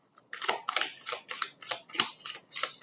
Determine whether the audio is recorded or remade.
recorded